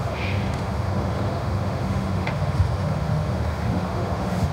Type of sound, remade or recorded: remade